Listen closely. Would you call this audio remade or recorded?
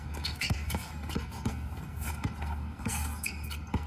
remade